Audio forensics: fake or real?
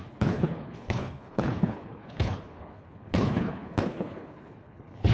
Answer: fake